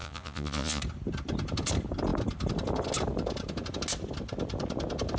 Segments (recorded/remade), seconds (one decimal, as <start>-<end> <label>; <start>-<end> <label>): 0.0-0.8 remade; 0.8-5.2 recorded